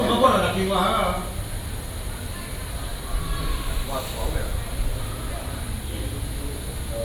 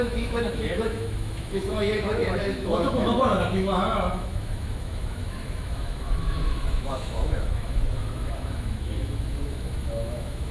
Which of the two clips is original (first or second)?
first